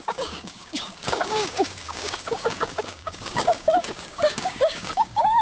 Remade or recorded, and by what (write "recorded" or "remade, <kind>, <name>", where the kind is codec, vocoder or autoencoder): remade, codec, DAC